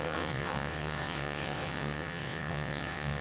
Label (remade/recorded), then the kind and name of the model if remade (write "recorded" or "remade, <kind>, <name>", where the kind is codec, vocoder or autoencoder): remade, vocoder, WaveNeXt